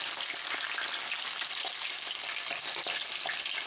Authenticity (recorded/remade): recorded